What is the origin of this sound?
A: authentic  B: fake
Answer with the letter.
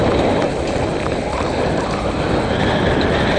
A